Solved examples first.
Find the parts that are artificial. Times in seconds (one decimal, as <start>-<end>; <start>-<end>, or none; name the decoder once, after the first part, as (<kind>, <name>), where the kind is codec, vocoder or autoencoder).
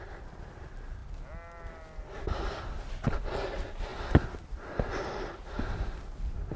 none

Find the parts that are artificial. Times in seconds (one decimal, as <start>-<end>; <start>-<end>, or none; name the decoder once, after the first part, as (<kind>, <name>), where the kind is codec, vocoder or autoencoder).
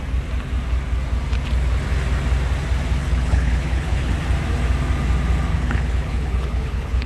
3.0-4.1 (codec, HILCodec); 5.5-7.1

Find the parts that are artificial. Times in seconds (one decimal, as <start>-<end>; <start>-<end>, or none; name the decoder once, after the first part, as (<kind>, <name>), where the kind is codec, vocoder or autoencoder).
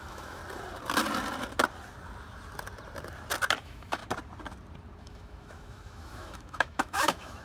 0.0-0.4 (autoencoder, DAC-VAE); 3.6-4.0; 5.0-7.4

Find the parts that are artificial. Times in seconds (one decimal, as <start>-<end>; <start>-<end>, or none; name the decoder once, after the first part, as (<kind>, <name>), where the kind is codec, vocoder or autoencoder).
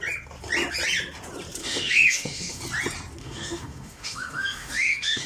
1.6-2.6 (autoencoder, DAC-VAE); 3.2-5.3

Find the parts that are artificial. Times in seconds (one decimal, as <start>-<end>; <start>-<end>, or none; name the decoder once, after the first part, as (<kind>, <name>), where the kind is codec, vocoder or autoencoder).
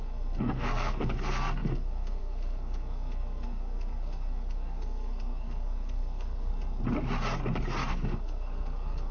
0.0-6.5 (codec, SNAC); 7.9-9.1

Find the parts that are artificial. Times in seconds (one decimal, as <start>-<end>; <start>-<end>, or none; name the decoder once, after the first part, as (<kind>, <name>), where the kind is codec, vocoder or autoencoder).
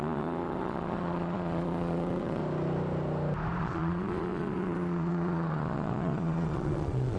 0.0-2.4 (vocoder, Vocos); 3.6-7.2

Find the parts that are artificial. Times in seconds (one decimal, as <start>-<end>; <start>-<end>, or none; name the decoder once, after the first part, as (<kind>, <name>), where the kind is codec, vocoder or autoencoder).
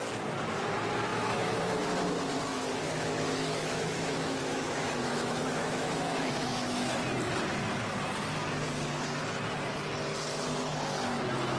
1.1-1.8 (autoencoder, DAC-VAE); 2.5-6.9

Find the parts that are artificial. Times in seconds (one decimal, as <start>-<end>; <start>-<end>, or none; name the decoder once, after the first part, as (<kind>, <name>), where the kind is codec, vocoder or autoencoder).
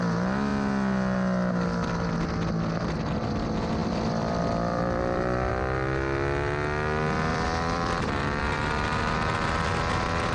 3.8-5.5 (vocoder, BigVGAN v2); 7.3-8.4